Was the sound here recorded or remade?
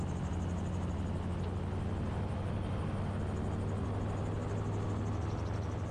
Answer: recorded